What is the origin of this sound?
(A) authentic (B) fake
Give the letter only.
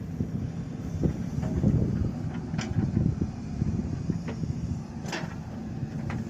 A